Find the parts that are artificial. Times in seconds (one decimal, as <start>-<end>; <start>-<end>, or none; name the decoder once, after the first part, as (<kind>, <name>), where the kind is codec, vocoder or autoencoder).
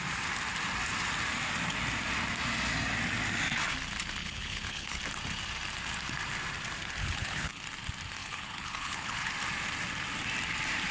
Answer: 4.2-5.0 (codec, HILCodec); 7.0-7.6; 8.2-9.3